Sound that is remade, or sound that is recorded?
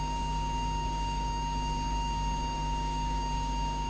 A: remade